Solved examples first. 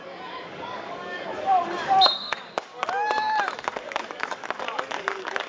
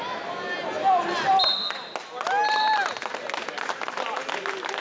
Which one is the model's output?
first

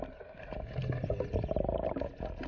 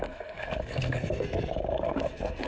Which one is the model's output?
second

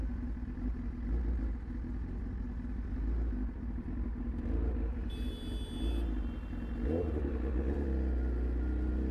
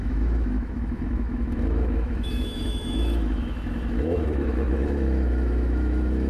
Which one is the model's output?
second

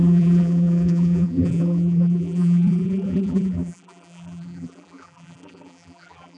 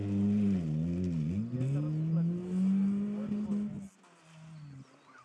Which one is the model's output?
first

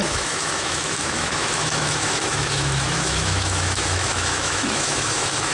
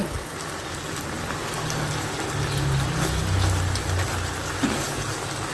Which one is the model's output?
first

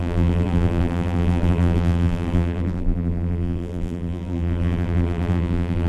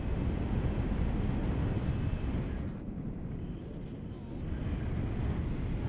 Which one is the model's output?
first